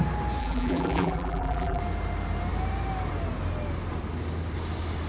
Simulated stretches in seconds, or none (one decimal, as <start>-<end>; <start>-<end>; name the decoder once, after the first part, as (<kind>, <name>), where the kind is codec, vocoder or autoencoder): 0.4-1.8 (vocoder, BigVGAN v2)